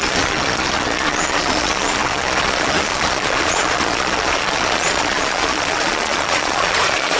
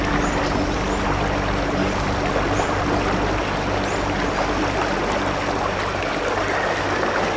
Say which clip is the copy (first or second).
first